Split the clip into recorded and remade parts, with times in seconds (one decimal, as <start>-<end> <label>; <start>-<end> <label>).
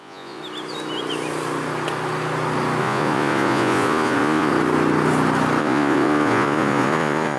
0.0-0.4 remade; 0.4-2.8 recorded; 2.8-4.5 remade; 4.5-5.6 recorded; 5.6-7.4 remade